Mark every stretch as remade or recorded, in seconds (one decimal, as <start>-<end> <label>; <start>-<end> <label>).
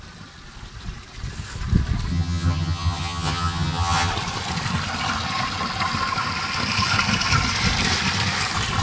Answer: 0.0-2.1 recorded; 2.1-4.1 remade; 4.1-8.8 recorded